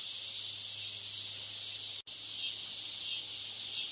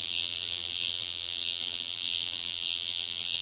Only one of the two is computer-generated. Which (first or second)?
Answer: second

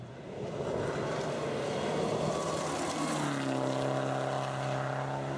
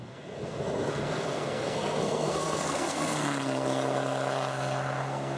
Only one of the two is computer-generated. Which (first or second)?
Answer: second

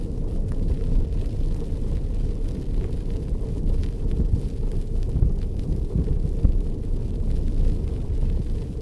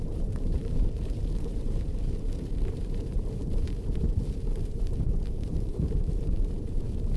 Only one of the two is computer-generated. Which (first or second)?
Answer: second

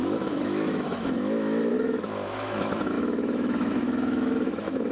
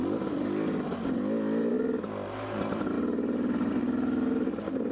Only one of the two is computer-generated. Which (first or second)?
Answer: first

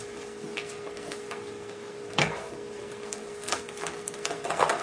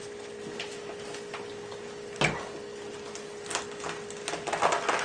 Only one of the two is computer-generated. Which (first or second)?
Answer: first